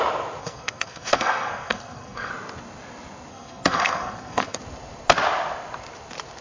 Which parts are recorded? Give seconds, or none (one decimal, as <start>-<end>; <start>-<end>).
0.0-0.4; 2.3-3.3; 4.6-6.4